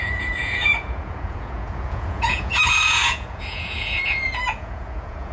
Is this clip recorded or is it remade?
remade